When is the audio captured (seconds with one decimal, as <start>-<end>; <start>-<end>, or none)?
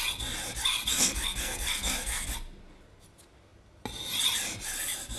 0.0-0.9; 2.3-5.2